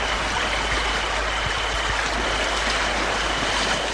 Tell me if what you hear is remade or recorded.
recorded